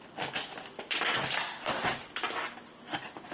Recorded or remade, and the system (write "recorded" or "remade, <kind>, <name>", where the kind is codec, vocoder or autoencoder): recorded